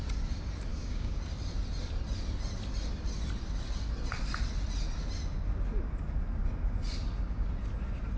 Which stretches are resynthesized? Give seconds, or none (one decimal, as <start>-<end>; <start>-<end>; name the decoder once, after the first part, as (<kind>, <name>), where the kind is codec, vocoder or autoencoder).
0.7-1.2 (codec, DAC)